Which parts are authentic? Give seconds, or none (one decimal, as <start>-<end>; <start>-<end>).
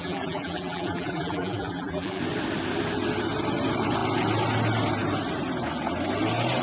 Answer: 2.2-6.6